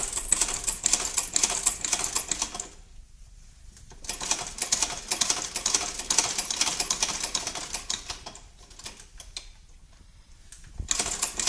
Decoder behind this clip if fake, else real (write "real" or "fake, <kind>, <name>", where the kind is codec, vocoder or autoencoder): real